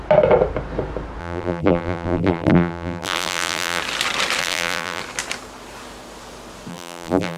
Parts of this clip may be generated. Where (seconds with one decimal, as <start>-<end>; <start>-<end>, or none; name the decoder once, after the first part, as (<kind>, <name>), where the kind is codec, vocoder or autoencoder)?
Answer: 1.2-3.8 (vocoder, BigVGAN v2); 4.4-5.0; 6.7-7.4